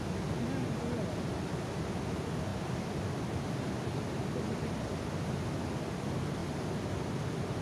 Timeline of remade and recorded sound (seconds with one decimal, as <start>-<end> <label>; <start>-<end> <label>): 0.0-7.6 recorded